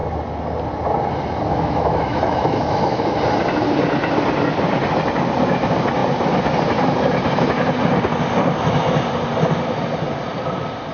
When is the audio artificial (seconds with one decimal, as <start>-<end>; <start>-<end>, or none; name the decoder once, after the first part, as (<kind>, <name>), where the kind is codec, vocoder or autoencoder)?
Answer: 1.5-3.0 (autoencoder, DAC-VAE)